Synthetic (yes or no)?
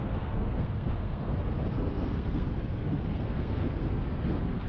yes